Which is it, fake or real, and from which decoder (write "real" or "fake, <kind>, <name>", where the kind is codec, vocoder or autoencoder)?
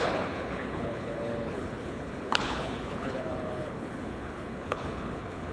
fake, codec, HILCodec